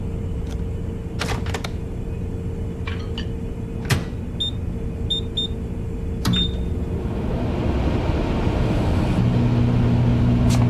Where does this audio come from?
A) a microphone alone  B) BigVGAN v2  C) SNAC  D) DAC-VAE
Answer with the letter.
A